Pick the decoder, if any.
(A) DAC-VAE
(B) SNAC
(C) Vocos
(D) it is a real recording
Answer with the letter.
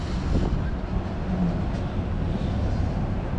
D